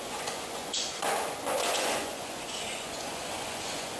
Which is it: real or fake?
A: fake